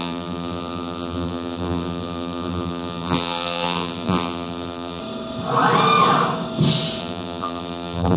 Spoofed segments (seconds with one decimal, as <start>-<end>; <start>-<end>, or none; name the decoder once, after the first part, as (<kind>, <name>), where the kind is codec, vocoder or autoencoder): 0.0-5.0 (vocoder, BigVGAN v2); 7.0-8.2